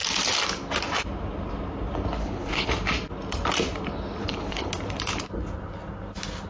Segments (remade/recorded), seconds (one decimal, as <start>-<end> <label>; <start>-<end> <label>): 0.0-2.2 recorded; 2.2-2.7 remade; 2.7-4.2 recorded; 4.2-4.7 remade; 4.7-6.5 recorded